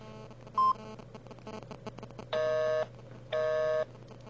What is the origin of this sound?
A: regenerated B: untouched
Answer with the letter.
B